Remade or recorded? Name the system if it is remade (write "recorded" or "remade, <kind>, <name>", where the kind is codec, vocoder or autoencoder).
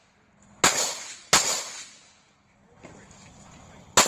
recorded